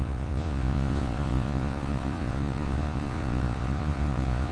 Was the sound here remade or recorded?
remade